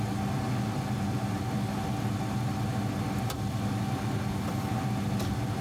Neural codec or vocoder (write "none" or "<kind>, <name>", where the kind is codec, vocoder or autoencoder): none